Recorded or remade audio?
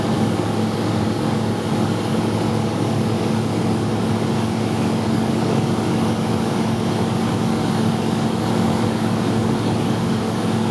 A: remade